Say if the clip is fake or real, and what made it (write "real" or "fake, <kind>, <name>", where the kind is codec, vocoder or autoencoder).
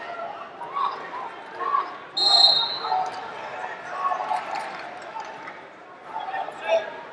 real